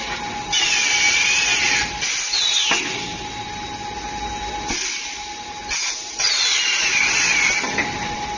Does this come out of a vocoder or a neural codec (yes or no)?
no